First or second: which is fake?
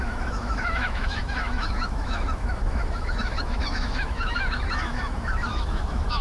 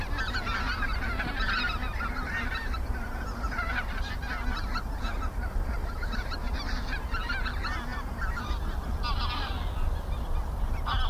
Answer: first